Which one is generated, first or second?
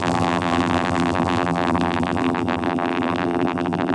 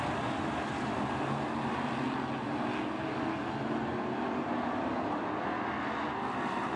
first